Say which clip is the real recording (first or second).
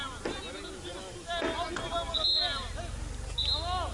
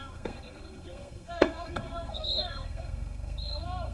first